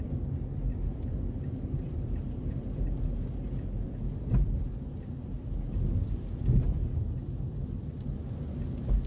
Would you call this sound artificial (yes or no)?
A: no